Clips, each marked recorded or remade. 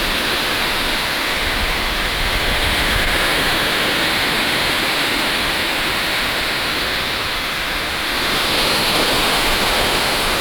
remade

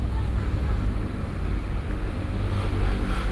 recorded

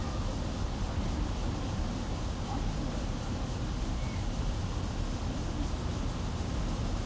recorded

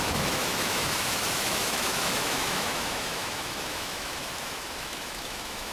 remade